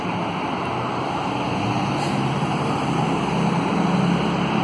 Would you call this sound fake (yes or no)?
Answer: no